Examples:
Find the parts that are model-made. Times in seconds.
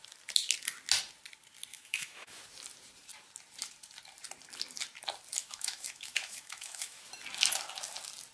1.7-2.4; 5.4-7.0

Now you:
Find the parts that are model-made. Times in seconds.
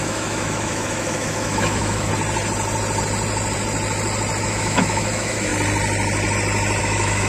0.0-2.1; 4.4-5.5; 6.8-7.3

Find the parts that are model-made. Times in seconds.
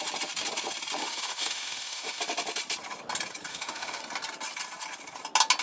1.0-2.2; 3.5-4.0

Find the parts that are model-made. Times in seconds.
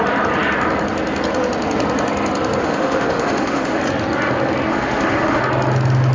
2.6-3.8; 4.7-5.4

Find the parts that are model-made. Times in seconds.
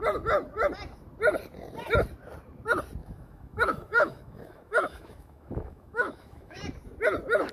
3.0-6.6